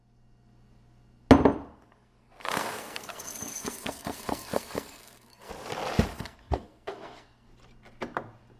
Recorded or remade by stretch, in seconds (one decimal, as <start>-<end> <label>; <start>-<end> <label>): 0.0-1.7 recorded; 1.7-5.5 remade; 5.5-6.1 recorded; 6.1-7.5 remade; 7.5-8.6 recorded